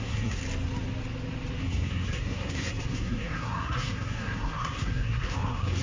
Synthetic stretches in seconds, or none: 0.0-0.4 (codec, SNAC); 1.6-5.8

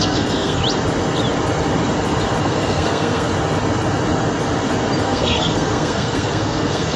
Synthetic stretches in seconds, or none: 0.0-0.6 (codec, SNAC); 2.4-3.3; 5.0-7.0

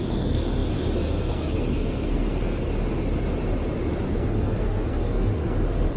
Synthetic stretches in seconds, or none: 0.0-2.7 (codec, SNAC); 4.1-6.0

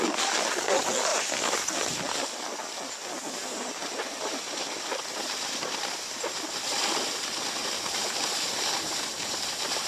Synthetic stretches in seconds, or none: none

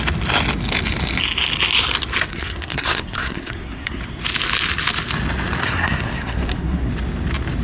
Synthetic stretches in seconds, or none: 2.3-4.0 (codec, SNAC); 5.6-6.9

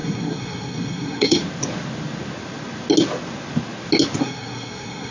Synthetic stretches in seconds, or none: 0.0-1.4 (codec, SNAC); 4.2-5.1

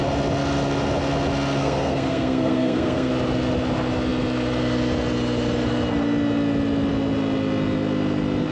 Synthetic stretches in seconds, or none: 1.6-3.1 (codec, SNAC)

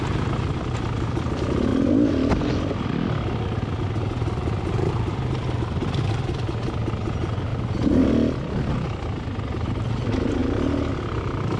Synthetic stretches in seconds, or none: none